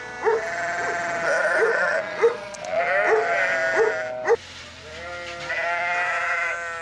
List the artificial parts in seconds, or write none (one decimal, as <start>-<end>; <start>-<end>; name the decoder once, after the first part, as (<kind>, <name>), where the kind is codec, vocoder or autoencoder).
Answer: 1.7-2.8 (vocoder, Vocos)